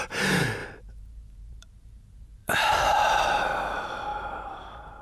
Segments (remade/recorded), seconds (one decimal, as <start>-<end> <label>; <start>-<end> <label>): 0.0-0.6 recorded; 0.6-3.6 remade; 3.6-4.1 recorded; 4.1-5.0 remade